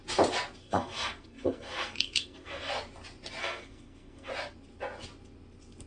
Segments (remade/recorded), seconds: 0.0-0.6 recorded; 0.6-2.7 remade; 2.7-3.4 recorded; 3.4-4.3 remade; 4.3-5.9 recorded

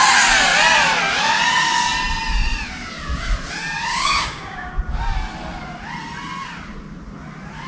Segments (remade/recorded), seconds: 0.0-3.9 recorded; 3.9-4.7 remade; 4.7-7.7 recorded

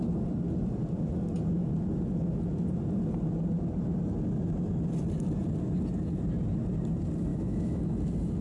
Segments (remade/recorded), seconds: 0.0-7.3 recorded; 7.3-7.8 remade; 7.8-8.4 recorded